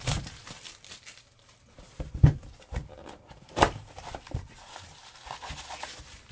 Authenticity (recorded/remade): remade